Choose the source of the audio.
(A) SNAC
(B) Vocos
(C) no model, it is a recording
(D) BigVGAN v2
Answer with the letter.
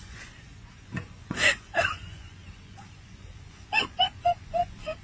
B